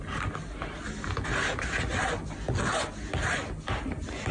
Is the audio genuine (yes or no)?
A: yes